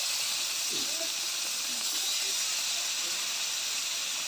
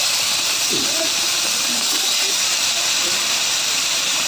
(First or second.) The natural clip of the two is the first